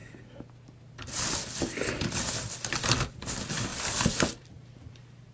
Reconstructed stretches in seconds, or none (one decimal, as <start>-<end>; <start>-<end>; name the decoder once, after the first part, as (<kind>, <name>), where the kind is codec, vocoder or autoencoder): 1.6-3.7 (vocoder, BigVGAN v2); 4.4-5.3